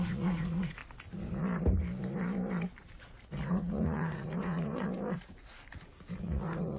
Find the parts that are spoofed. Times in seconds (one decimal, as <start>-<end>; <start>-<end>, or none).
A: 0.0-0.8; 3.5-4.9; 6.2-6.8